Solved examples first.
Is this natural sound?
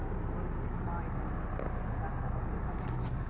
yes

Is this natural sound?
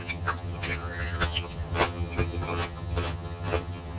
no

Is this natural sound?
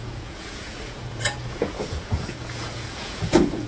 no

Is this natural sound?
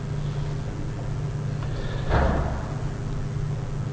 yes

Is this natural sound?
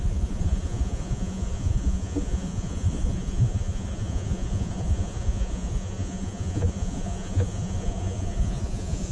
no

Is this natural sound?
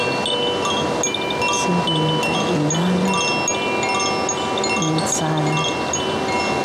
yes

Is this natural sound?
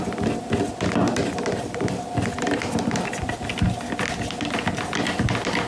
yes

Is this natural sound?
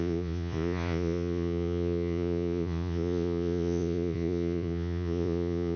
no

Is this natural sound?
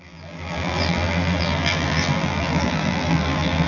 no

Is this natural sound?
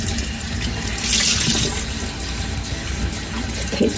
yes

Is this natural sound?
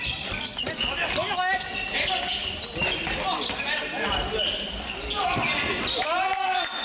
yes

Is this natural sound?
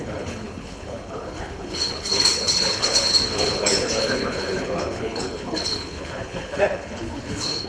no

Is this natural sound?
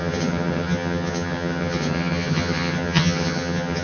no